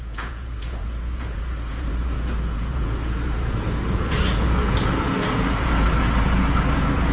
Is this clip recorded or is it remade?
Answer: remade